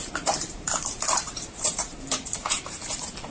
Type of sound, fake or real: fake